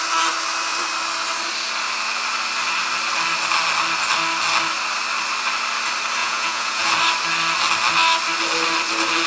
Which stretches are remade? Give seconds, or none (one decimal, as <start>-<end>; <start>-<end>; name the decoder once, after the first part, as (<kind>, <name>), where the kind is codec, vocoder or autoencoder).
6.2-6.9 (vocoder, Vocos)